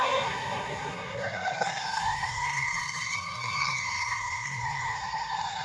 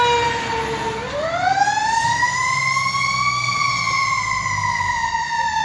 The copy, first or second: first